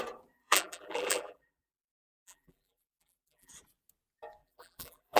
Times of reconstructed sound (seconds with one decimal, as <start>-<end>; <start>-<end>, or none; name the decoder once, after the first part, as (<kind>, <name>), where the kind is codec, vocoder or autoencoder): 0.4-3.5 (vocoder, BigVGAN v2); 4.4-5.2